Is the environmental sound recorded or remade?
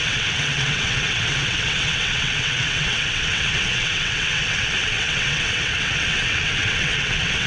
remade